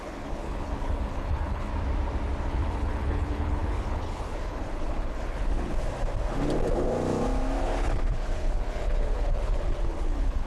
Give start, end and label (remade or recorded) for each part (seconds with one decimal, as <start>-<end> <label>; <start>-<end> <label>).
0.0-1.7 remade; 1.7-2.5 recorded; 2.5-5.7 remade; 5.7-7.6 recorded; 7.6-10.5 remade